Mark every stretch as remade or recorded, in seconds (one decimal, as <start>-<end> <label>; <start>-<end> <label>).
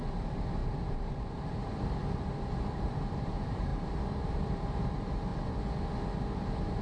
0.0-5.3 remade; 5.3-6.8 recorded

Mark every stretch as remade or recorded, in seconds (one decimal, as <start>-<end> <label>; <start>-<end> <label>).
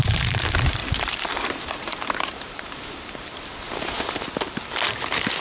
0.0-3.3 remade; 3.3-5.4 recorded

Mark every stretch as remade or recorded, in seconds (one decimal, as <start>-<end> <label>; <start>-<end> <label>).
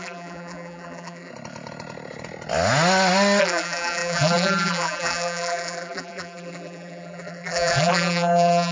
0.0-1.3 remade; 1.3-3.4 recorded; 3.4-8.7 remade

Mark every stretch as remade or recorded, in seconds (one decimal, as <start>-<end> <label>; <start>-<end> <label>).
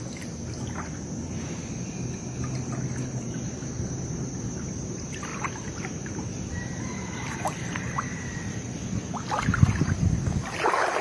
0.0-5.3 recorded; 5.3-9.0 remade; 9.0-11.0 recorded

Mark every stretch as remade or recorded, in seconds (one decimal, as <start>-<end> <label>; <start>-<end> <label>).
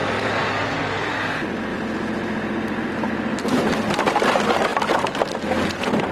0.0-1.7 recorded; 1.7-3.9 remade; 3.9-6.1 recorded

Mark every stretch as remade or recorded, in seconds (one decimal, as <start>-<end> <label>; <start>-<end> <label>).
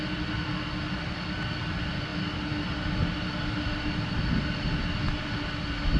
0.0-6.0 recorded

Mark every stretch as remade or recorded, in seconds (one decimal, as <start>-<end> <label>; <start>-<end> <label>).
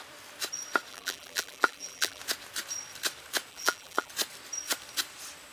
0.0-0.9 recorded; 0.9-2.2 remade; 2.2-3.5 recorded; 3.5-4.1 remade; 4.1-5.5 recorded